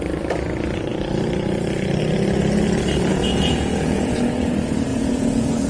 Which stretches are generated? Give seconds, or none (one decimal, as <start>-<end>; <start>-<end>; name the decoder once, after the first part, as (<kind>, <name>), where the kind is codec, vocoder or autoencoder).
3.1-4.5 (vocoder, Vocos); 4.9-5.7